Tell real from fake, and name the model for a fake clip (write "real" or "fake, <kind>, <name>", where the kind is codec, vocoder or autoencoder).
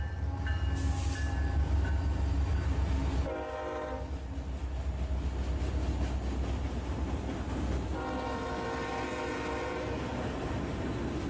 real